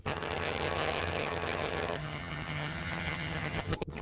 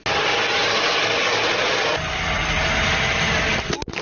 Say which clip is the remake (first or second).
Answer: first